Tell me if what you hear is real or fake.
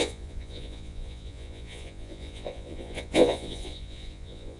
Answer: fake